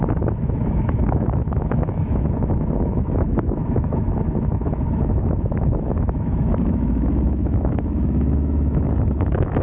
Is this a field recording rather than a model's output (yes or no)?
no